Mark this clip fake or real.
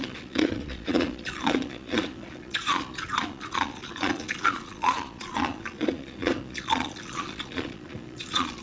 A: fake